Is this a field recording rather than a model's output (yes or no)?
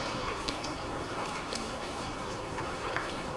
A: no